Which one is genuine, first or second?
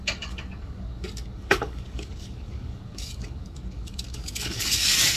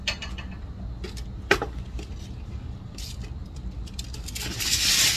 second